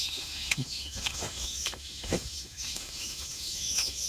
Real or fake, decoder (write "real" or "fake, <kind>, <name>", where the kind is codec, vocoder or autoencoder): fake, autoencoder, DAC-VAE